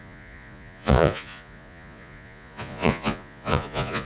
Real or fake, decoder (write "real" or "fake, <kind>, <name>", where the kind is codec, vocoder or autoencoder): fake, vocoder, Vocos